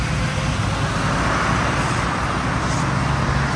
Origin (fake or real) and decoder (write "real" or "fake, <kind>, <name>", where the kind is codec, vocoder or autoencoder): real